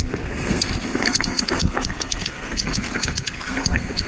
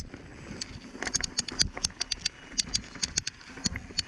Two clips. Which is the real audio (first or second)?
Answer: second